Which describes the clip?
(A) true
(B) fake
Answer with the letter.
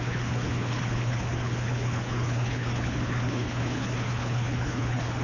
B